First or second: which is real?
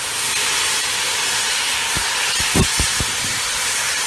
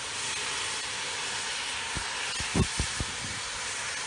second